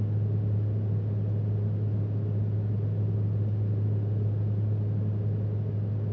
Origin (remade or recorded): recorded